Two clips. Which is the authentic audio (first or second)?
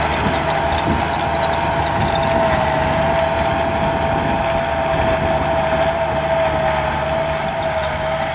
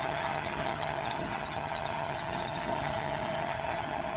first